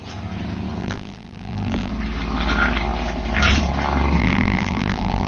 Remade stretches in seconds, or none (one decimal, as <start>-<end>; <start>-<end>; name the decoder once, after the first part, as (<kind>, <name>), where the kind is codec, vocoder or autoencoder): 0.8-1.9 (vocoder, BigVGAN v2); 4.2-5.3